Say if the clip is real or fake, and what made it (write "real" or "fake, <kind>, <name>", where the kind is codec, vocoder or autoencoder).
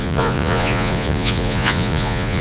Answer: fake, vocoder, Vocos